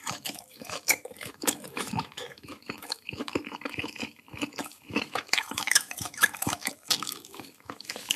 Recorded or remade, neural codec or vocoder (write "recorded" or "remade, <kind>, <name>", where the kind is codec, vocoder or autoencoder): remade, autoencoder, DAC-VAE